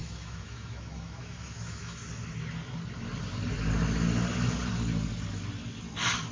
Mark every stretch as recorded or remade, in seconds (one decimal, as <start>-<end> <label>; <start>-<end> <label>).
0.0-2.1 remade; 2.1-6.3 recorded